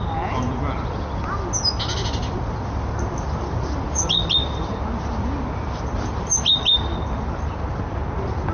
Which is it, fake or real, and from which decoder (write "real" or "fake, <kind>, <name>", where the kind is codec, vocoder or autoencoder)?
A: real